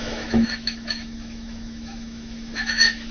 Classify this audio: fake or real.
fake